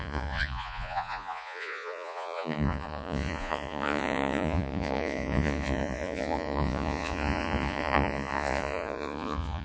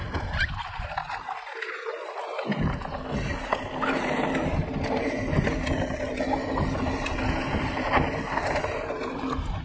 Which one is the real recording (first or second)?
second